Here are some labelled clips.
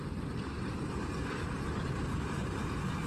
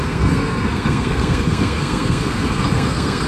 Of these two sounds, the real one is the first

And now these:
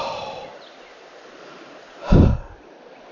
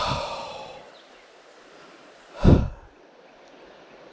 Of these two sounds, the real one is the first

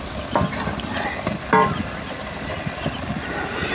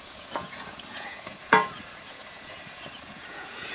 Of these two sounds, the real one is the first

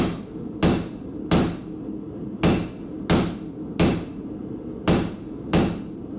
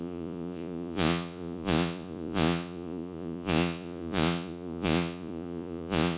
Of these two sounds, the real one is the first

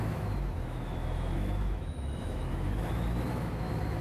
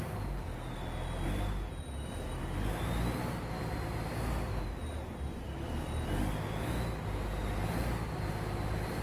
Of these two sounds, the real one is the second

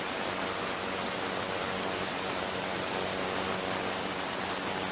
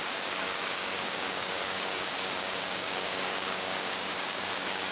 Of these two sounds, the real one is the first